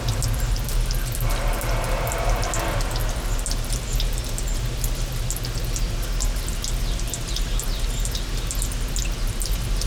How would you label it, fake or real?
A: real